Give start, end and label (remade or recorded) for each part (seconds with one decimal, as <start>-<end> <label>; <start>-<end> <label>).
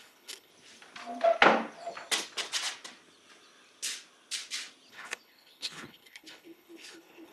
0.0-0.5 remade; 0.5-4.9 recorded; 4.9-7.3 remade